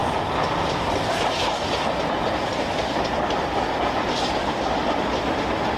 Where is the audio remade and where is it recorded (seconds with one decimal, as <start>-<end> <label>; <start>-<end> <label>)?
0.0-5.8 recorded